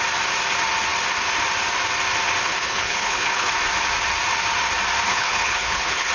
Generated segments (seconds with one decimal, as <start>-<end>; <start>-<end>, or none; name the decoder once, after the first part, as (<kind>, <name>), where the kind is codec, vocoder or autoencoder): 2.4-3.5 (codec, HILCodec); 5.1-6.1